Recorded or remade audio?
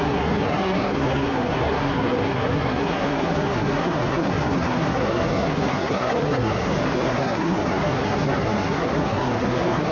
remade